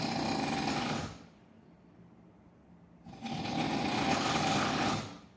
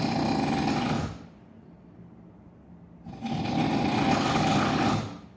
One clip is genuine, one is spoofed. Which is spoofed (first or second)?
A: first